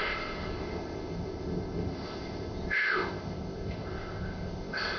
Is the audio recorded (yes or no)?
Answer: no